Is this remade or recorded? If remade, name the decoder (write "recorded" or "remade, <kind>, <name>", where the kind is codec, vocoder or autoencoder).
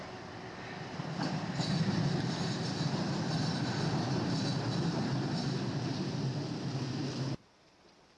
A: recorded